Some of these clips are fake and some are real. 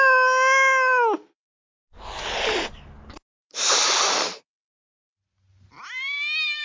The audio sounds real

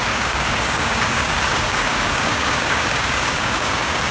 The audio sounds fake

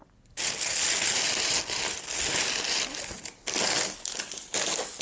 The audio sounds real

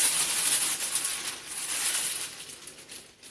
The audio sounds real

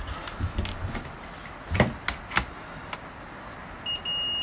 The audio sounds real